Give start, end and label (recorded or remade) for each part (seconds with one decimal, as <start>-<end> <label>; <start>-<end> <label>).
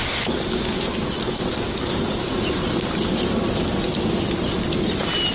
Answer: 0.0-5.3 recorded